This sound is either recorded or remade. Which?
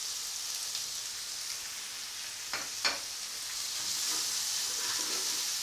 recorded